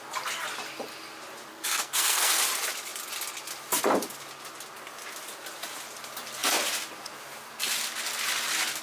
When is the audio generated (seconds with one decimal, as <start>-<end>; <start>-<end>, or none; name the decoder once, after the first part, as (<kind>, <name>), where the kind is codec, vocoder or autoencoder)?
1.5-2.4 (codec, SNAC)